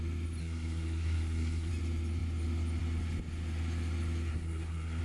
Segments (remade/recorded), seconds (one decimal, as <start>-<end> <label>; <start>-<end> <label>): 0.0-0.4 recorded; 0.4-1.7 remade; 1.7-4.3 recorded; 4.3-5.0 remade